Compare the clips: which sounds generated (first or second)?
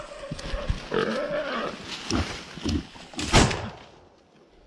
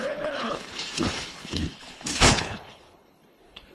second